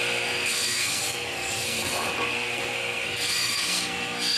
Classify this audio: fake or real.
fake